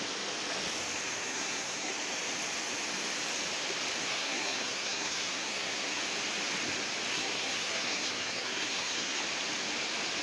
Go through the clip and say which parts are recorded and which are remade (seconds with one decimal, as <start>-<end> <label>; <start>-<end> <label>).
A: 0.0-1.2 recorded; 1.2-1.9 remade; 1.9-4.0 recorded; 4.0-6.0 remade; 6.0-7.1 recorded; 7.1-9.2 remade; 9.2-10.2 recorded